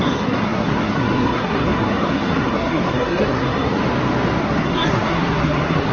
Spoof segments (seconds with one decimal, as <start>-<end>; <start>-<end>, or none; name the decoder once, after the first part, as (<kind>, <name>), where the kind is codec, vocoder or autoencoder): 0.0-3.8 (codec, SNAC); 4.4-5.9